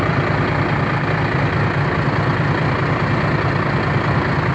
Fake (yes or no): no